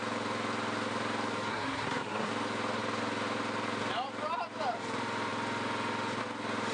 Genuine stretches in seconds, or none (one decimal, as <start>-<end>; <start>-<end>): 0.0-1.5; 2.3-6.7